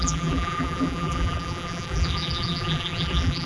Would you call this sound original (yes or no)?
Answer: no